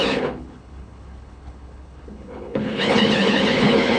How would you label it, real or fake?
fake